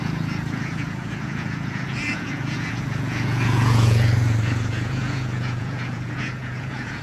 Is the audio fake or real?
fake